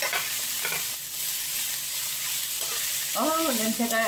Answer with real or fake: real